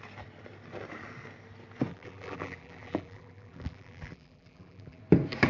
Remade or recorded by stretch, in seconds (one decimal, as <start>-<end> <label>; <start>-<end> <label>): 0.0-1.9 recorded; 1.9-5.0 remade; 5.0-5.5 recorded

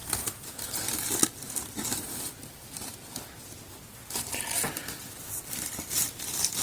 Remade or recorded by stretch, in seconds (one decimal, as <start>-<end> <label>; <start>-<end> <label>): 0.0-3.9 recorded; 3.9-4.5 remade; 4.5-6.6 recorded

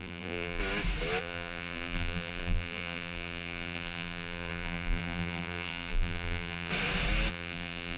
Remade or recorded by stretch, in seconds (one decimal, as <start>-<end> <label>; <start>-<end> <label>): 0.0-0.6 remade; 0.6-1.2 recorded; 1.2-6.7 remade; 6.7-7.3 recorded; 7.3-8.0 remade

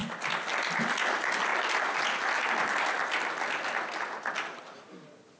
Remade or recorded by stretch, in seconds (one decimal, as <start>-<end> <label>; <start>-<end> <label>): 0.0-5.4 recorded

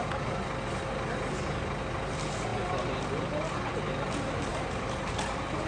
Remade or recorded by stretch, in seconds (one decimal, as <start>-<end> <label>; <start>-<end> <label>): 0.0-4.5 recorded; 4.5-5.1 remade; 5.1-5.7 recorded

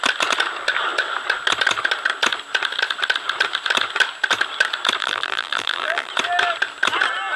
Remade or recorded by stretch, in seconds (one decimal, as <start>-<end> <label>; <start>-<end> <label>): 0.0-5.0 recorded; 5.0-6.1 remade; 6.1-7.4 recorded

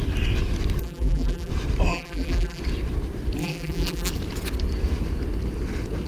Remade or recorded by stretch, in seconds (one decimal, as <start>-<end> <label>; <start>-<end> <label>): 0.0-0.8 recorded; 0.8-1.5 remade; 1.5-1.9 recorded; 1.9-2.6 remade; 2.6-3.4 recorded; 3.4-4.1 remade; 4.1-6.1 recorded

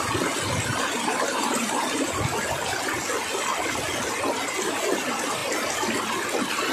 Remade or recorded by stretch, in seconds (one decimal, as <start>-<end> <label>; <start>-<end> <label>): 0.0-0.7 recorded; 0.7-2.1 remade; 2.1-6.7 recorded